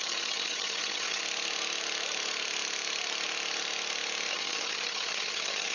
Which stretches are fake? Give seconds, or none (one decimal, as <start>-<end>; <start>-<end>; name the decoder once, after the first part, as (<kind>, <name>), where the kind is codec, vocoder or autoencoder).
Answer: 0.0-1.2 (vocoder, HiFi-GAN); 4.3-5.7